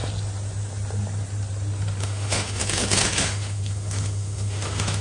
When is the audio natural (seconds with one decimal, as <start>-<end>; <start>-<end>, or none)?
0.0-2.0